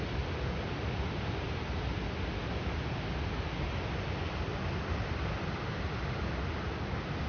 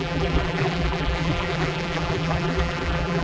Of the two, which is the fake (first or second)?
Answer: second